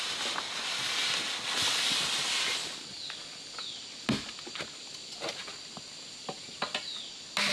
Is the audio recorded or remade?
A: recorded